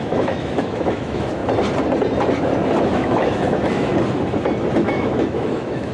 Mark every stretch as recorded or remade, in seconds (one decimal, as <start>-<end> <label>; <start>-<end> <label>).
0.0-1.4 remade; 1.4-2.8 recorded; 2.8-3.9 remade; 3.9-4.8 recorded; 4.8-5.9 remade